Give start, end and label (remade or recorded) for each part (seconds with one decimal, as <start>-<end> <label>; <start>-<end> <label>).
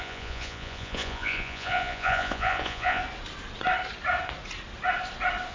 0.0-3.0 remade; 3.0-5.5 recorded